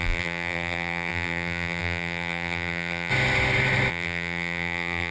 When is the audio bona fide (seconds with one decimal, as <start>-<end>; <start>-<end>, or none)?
3.1-3.9